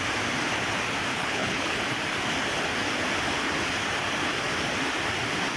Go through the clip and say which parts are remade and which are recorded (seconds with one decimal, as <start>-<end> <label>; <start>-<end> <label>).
0.0-1.1 recorded; 1.1-1.8 remade; 1.8-5.6 recorded

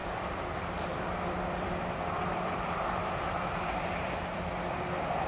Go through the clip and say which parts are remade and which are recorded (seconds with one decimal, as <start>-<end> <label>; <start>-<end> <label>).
0.0-5.3 remade

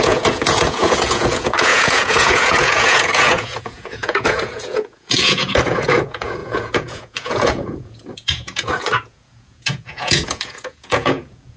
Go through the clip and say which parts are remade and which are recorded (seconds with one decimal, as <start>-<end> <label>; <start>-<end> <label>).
0.0-11.6 remade

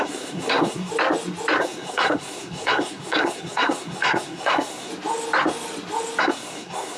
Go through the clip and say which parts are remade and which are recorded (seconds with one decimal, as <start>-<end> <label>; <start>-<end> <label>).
0.0-0.9 remade; 0.9-1.6 recorded; 1.6-4.9 remade; 4.9-6.2 recorded; 6.2-7.0 remade

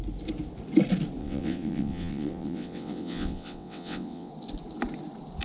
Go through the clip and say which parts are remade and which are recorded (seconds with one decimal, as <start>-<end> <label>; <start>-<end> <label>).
0.0-1.2 recorded; 1.2-4.3 remade; 4.3-5.4 recorded

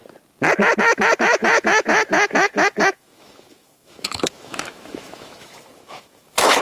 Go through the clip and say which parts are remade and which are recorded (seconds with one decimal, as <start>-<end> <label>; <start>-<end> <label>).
0.0-0.8 recorded; 0.8-6.6 remade

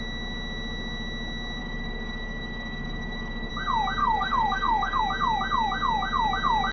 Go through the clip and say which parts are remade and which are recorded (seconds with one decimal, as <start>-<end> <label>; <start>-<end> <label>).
0.0-1.6 recorded; 1.6-3.5 remade; 3.5-4.0 recorded; 4.0-5.0 remade; 5.0-6.7 recorded